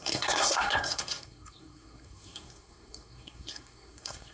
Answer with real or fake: fake